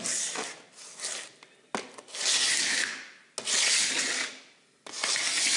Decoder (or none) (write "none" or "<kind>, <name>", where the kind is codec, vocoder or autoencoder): none